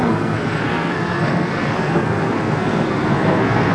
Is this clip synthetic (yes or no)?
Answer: yes